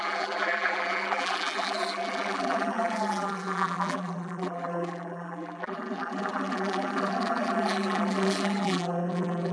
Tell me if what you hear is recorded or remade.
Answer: remade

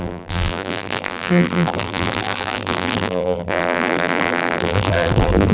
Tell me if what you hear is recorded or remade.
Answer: remade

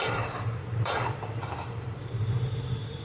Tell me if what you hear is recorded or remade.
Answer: remade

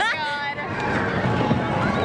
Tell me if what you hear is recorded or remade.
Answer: recorded